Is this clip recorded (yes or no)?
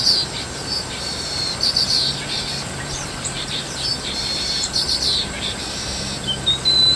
no